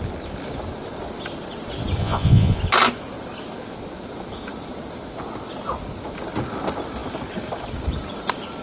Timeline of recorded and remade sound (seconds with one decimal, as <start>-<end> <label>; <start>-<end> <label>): 0.0-2.0 recorded; 2.0-2.6 remade; 2.6-8.6 recorded